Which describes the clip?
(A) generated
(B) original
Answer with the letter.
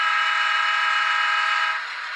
A